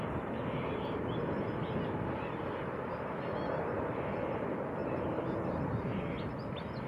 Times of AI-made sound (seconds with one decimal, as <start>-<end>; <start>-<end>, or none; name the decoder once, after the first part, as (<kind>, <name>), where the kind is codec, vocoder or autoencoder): none